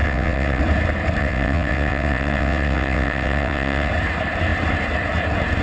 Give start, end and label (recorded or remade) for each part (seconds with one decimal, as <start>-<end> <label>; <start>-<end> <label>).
0.0-0.6 remade; 0.6-1.2 recorded; 1.2-3.9 remade; 3.9-5.6 recorded